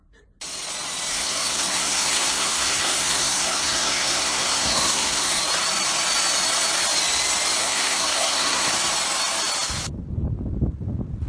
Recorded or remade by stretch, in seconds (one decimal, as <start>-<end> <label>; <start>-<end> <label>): 0.0-1.1 recorded; 1.1-5.4 remade; 5.4-7.6 recorded; 7.6-8.7 remade; 8.7-11.3 recorded